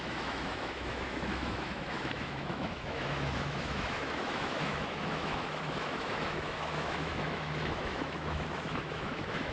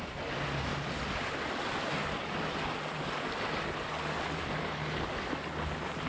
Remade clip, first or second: first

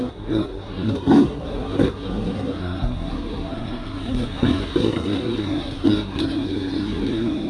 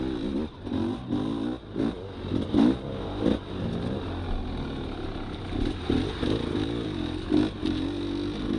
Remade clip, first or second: first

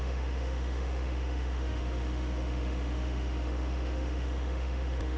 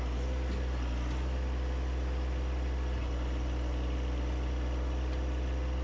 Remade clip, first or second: first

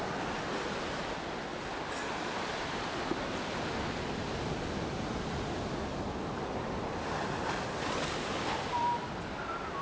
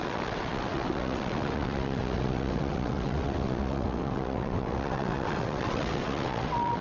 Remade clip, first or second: second